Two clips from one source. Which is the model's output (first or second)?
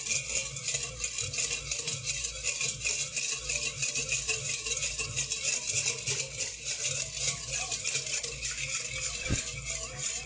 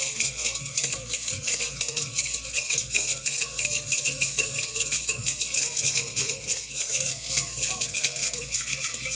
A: second